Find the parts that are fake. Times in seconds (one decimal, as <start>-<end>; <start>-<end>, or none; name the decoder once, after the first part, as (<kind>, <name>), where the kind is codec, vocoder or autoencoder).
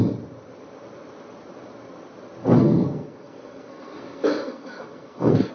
2.4-5.5 (codec, SNAC)